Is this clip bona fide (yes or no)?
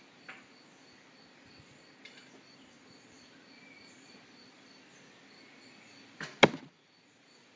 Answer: yes